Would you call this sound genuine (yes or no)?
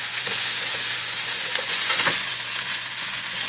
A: no